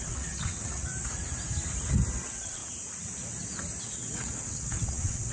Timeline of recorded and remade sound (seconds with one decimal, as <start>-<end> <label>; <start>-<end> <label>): 0.0-0.9 remade; 0.9-2.1 recorded; 2.1-2.6 remade; 2.6-3.8 recorded; 3.8-5.3 remade